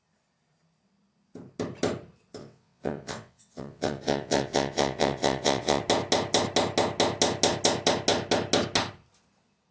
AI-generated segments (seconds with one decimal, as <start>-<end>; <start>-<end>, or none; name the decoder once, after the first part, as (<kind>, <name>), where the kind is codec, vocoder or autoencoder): 2.4-5.8 (vocoder, WaveNeXt)

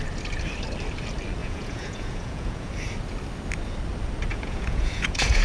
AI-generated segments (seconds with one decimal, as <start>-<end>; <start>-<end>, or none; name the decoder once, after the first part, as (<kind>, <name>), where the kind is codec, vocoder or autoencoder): 1.4-2.7 (vocoder, Vocos); 4.3-5.4